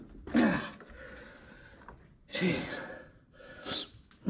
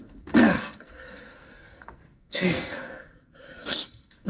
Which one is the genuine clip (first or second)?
first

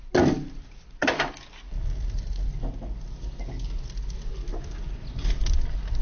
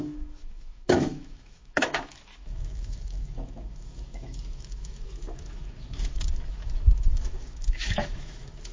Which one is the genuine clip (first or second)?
first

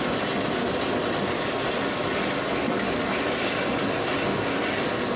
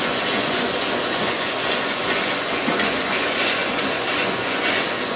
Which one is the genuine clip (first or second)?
first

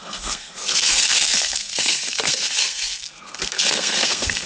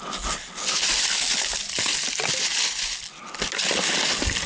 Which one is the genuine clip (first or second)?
second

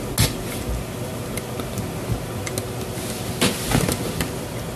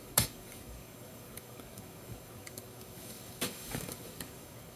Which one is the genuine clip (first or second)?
first